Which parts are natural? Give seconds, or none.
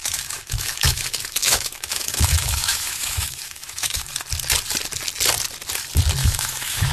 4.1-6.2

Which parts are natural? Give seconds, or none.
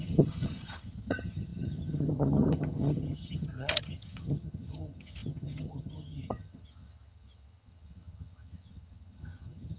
none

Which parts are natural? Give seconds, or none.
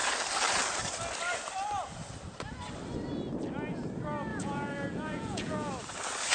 0.0-4.3; 5.7-6.3